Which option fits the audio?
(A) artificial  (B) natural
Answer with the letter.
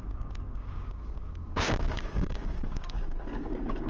A